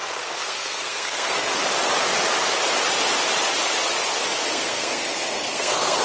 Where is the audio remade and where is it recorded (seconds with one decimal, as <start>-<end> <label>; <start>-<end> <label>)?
0.0-1.5 remade; 1.5-4.5 recorded; 4.5-6.0 remade